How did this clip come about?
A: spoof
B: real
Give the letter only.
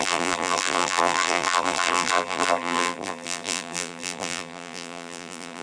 A